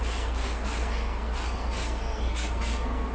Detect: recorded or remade remade